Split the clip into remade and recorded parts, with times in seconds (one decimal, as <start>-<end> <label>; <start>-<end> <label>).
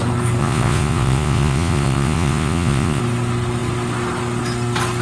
0.0-0.4 recorded; 0.4-3.0 remade; 3.0-5.0 recorded